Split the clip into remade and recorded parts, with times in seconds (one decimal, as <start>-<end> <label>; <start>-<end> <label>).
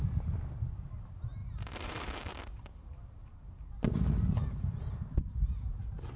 0.0-1.4 recorded; 1.4-3.7 remade; 3.7-4.4 recorded; 4.4-4.9 remade; 4.9-6.2 recorded